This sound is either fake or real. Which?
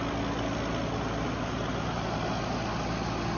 real